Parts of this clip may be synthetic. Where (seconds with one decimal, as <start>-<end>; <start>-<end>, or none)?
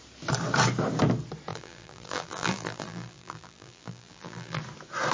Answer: 1.5-4.6